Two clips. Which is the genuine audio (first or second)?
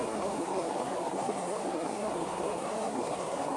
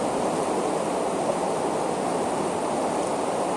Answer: second